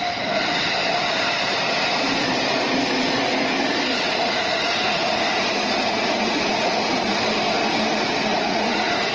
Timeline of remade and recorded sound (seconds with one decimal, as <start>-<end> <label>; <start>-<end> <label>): 0.0-3.9 recorded; 3.9-7.2 remade; 7.2-8.3 recorded; 8.3-9.1 remade